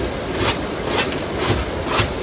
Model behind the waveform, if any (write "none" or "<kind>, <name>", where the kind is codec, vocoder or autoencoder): none